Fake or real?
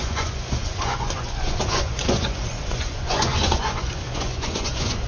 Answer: fake